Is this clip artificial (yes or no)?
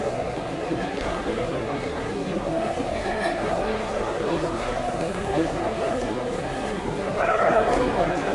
yes